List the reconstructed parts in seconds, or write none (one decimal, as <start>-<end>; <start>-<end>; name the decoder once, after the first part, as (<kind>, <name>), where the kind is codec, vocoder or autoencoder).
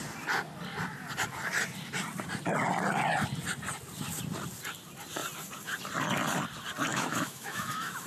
6.9-8.1 (autoencoder, DAC-VAE)